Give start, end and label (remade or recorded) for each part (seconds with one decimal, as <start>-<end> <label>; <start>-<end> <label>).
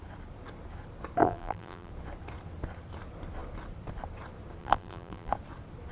0.0-1.2 recorded; 1.2-1.9 remade; 1.9-4.6 recorded; 4.6-5.3 remade; 5.3-5.9 recorded